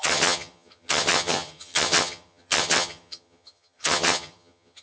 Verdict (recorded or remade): remade